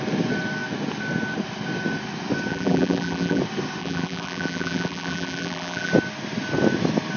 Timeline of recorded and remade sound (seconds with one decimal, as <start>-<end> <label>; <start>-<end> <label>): 0.0-2.5 recorded; 2.5-3.4 remade; 3.4-3.8 recorded; 3.8-5.9 remade; 5.9-7.2 recorded